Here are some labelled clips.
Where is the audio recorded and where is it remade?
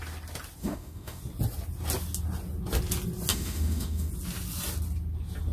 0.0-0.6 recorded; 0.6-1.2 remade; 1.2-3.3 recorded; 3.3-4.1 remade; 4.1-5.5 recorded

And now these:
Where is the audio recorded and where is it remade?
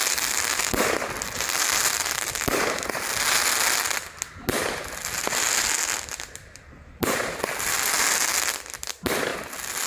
0.0-9.9 recorded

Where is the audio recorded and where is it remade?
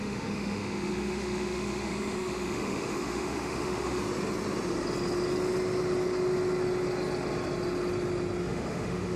0.0-4.0 remade; 4.0-8.4 recorded; 8.4-9.2 remade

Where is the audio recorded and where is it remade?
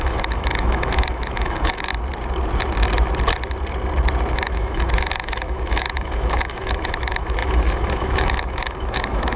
0.0-1.9 remade; 1.9-4.3 recorded; 4.3-9.4 remade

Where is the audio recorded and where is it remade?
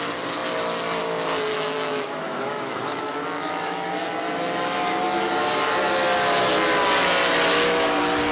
0.0-1.5 recorded; 1.5-3.9 remade; 3.9-8.3 recorded